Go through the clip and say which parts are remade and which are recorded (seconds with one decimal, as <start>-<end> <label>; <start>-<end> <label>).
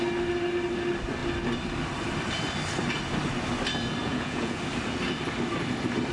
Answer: 0.0-4.0 recorded; 4.0-4.6 remade; 4.6-6.1 recorded